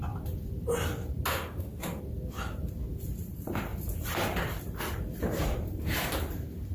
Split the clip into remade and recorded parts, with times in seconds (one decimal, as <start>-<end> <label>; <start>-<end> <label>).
0.0-1.3 recorded; 1.3-2.0 remade; 2.0-6.7 recorded